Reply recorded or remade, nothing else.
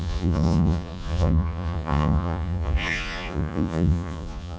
remade